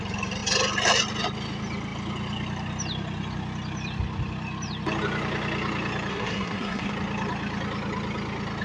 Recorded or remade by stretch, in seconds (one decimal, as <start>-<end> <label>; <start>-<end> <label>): 0.0-6.1 recorded; 6.1-6.9 remade; 6.9-8.6 recorded